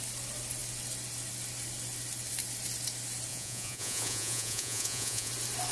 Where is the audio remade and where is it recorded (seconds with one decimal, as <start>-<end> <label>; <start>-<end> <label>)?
0.0-3.3 recorded; 3.3-5.3 remade; 5.3-5.7 recorded